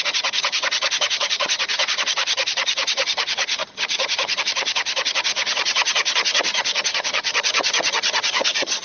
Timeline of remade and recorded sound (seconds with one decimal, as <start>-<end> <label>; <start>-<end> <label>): 0.0-8.8 remade